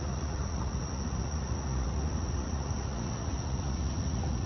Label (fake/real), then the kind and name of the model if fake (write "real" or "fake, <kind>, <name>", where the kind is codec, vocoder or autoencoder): fake, vocoder, Vocos